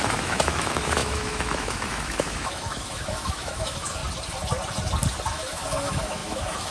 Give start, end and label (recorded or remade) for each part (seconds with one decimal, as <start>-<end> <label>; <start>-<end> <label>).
0.0-4.0 remade; 4.0-5.3 recorded; 5.3-6.7 remade